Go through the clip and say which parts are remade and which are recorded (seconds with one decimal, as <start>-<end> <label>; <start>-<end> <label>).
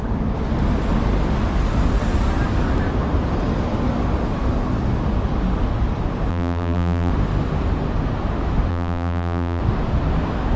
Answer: 0.0-6.3 recorded; 6.3-7.1 remade; 7.1-8.7 recorded; 8.7-9.6 remade; 9.6-10.6 recorded